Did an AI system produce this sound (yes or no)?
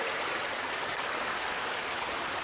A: no